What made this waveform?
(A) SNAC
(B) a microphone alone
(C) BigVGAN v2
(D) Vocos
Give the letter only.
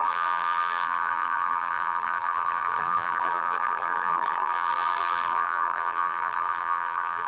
C